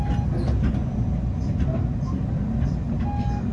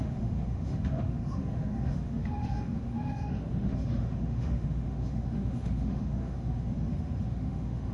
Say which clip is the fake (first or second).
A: second